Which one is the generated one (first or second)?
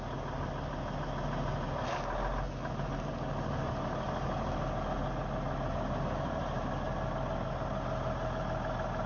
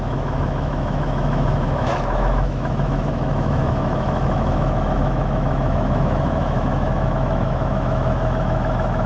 second